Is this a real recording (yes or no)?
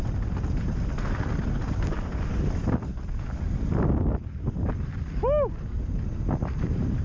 yes